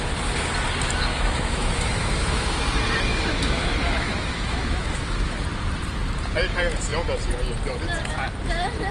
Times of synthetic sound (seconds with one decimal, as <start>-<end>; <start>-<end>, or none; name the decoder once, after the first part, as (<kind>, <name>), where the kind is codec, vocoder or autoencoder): 1.1-2.6 (autoencoder, DAC-VAE); 3.1-5.4